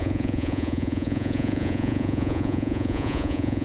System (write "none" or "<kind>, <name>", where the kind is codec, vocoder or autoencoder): vocoder, Vocos